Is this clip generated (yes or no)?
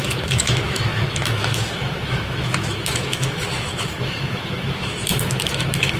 yes